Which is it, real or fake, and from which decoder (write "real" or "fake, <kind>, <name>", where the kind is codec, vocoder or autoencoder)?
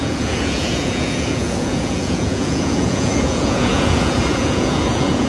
fake, vocoder, Vocos